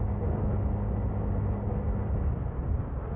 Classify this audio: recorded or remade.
recorded